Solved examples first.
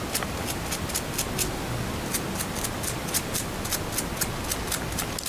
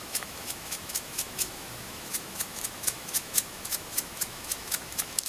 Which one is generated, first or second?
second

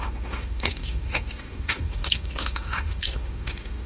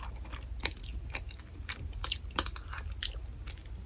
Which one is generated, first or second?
first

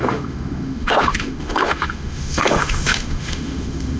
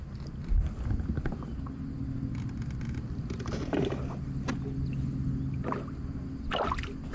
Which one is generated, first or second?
first